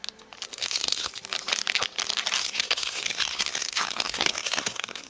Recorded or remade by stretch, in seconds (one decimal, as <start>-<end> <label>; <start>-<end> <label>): 0.0-0.5 recorded; 0.5-1.1 remade; 1.1-2.4 recorded; 2.4-5.1 remade